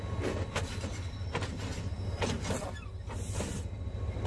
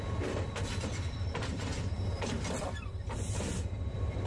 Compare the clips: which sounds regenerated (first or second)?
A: second